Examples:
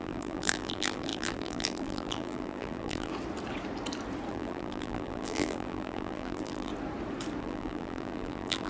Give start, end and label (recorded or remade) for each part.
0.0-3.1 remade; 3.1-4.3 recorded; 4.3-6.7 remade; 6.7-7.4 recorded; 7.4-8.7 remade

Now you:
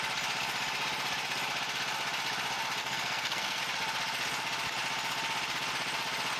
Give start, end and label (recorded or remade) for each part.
0.0-2.8 recorded; 2.8-3.6 remade; 3.6-6.4 recorded

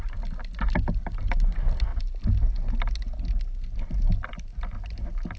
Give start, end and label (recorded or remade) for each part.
0.0-5.4 recorded

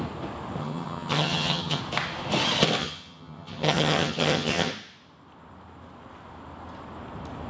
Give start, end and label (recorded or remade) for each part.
0.0-0.6 recorded; 0.6-1.8 remade; 1.8-2.8 recorded; 2.8-4.7 remade; 4.7-7.5 recorded